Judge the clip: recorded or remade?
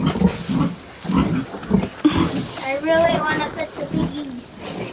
recorded